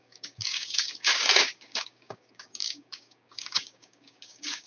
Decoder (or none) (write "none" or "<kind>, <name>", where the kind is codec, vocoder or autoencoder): codec, DAC